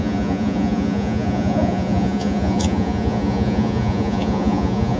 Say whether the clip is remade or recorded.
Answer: remade